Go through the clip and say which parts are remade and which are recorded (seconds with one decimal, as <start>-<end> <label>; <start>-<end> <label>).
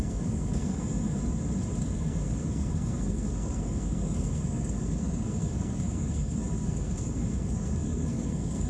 0.0-1.2 remade; 1.2-1.8 recorded; 1.8-8.7 remade